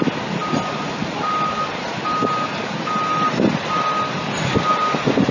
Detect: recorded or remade recorded